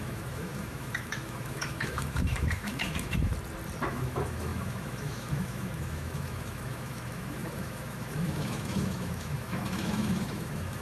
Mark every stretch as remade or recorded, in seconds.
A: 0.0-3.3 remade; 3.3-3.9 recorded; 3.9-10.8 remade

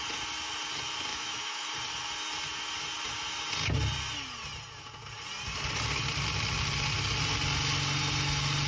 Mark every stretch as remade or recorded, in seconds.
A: 0.0-1.1 recorded; 1.1-1.7 remade; 1.7-8.7 recorded

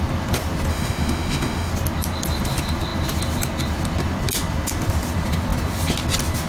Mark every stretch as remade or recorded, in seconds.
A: 0.0-0.7 recorded; 0.7-1.7 remade; 1.7-6.5 recorded

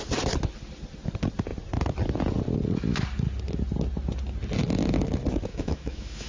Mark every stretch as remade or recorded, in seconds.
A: 0.0-5.5 recorded; 5.5-6.3 remade